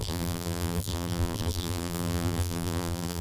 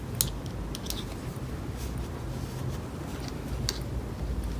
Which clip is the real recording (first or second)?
second